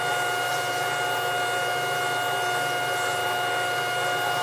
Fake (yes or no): no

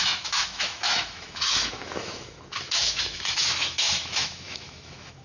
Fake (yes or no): yes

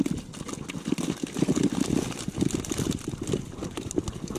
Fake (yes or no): no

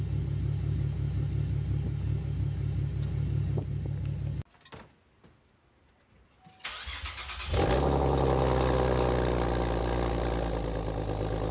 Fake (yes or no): no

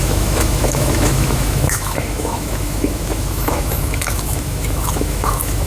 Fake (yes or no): yes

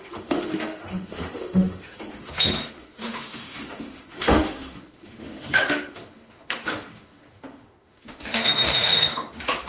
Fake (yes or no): yes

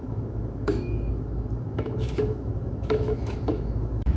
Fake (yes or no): yes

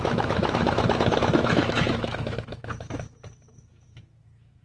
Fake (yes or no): yes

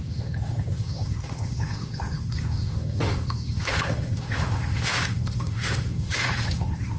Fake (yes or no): yes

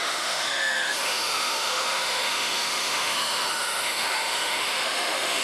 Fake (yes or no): yes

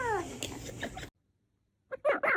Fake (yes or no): no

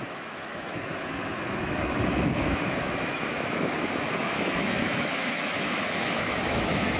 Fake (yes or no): yes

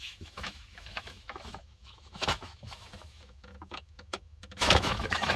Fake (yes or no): yes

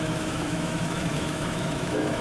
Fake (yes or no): yes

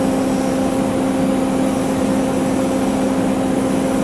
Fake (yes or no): no